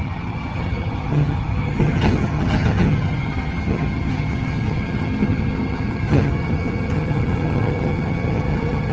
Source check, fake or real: fake